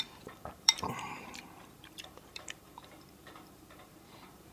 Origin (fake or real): fake